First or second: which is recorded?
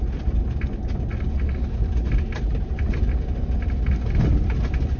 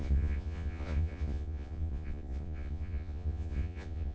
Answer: first